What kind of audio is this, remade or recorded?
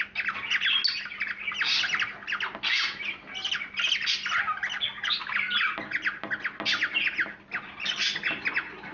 recorded